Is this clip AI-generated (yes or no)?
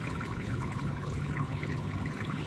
yes